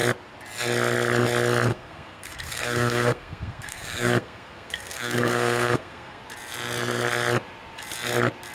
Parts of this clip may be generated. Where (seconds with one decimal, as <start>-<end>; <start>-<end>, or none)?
1.7-6.2